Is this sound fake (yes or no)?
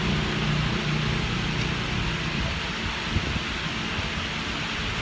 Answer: no